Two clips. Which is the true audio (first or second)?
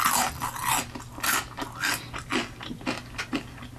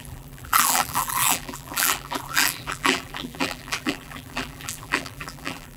first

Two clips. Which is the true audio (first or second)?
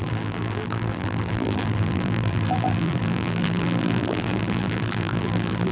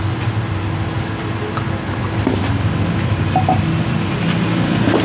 second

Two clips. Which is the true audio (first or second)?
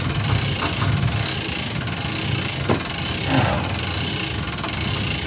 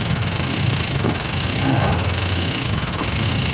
first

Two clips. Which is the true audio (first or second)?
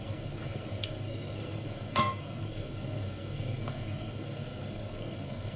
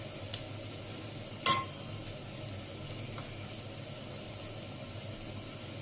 second